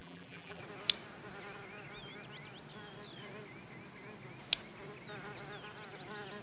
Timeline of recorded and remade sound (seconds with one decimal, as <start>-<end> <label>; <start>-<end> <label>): 0.0-0.6 remade; 0.6-6.4 recorded